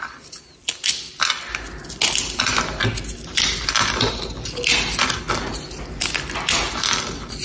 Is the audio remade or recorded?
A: recorded